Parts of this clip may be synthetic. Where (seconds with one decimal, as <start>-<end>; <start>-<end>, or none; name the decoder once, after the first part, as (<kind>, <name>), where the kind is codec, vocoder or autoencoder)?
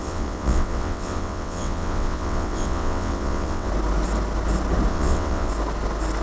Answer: 0.0-3.7 (vocoder, WaveNeXt); 4.9-5.5